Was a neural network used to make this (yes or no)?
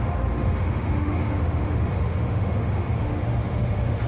yes